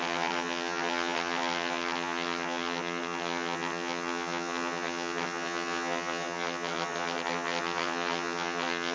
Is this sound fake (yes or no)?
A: yes